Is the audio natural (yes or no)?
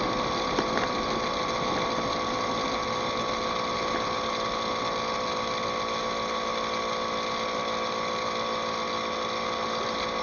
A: yes